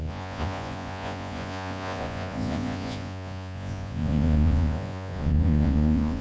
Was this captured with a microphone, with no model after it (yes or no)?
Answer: no